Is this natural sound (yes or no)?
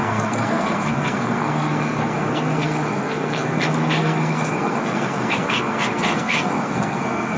no